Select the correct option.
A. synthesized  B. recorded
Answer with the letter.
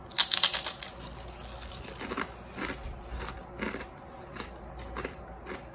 B